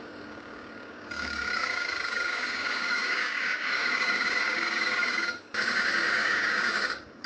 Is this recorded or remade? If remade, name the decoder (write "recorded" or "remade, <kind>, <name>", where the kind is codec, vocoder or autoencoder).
remade, codec, DAC